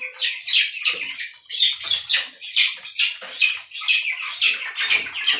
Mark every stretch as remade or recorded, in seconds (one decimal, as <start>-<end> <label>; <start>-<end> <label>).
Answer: 0.0-2.1 recorded; 2.1-4.6 remade; 4.6-5.4 recorded